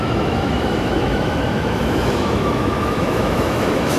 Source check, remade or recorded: remade